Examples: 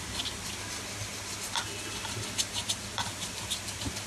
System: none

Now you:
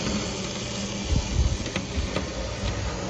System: none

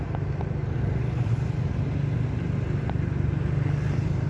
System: none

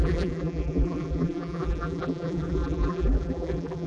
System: vocoder, BigVGAN v2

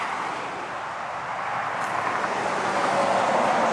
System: none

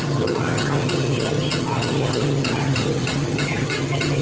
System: vocoder, HiFi-GAN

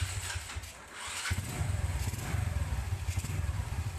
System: vocoder, BigVGAN v2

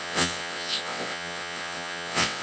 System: vocoder, WaveNeXt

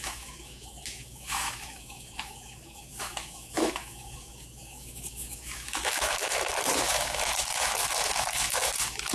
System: autoencoder, DAC-VAE